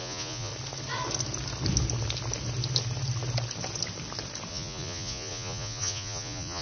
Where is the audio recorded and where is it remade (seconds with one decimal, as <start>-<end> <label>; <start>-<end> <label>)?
0.0-0.5 remade; 0.5-4.5 recorded; 4.5-6.6 remade